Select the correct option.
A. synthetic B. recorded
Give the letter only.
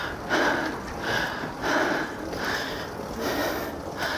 B